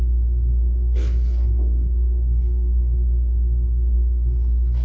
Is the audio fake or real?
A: fake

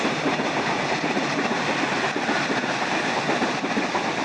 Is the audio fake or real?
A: real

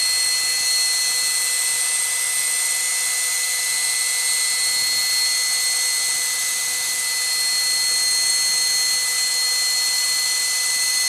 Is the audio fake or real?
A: real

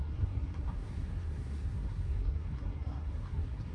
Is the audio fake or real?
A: fake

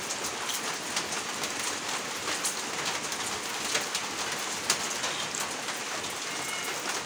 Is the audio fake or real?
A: real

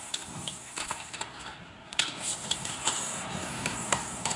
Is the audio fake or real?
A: fake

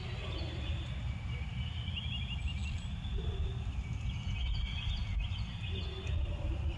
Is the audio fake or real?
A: real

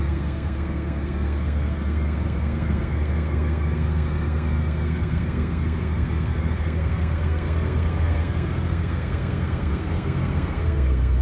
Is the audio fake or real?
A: fake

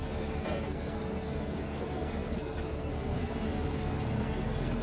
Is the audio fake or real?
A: fake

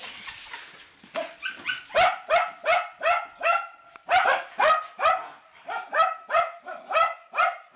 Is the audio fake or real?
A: real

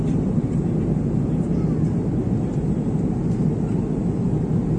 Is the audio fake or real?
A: real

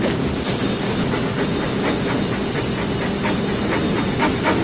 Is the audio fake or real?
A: real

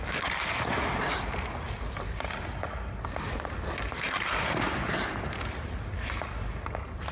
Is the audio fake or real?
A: real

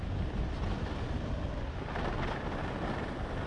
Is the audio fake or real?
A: real